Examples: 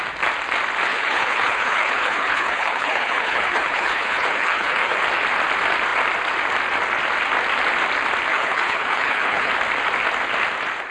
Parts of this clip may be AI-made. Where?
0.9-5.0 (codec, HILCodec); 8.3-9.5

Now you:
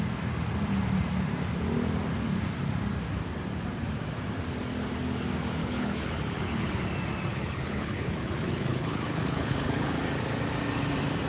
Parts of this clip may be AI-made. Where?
5.6-6.8 (codec, HILCodec); 7.3-10.0

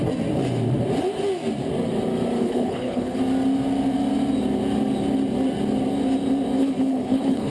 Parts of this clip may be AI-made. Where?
2.4-3.2 (codec, HILCodec); 6.6-7.5

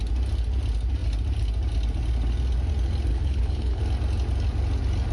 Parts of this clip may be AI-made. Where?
3.1-3.8 (codec, HILCodec)